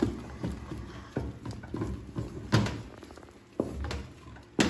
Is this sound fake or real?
real